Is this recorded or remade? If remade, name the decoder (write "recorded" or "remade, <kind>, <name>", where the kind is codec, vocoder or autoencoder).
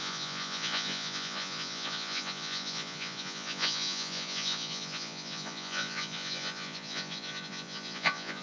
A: remade, vocoder, Vocos